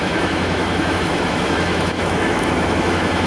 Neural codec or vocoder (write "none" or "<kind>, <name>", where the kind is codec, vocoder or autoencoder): autoencoder, DAC-VAE